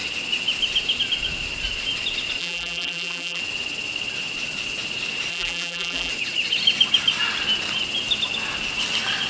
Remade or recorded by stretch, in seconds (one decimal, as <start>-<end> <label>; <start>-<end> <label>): 0.0-2.4 recorded; 2.4-3.4 remade; 3.4-5.3 recorded; 5.3-6.1 remade; 6.1-9.3 recorded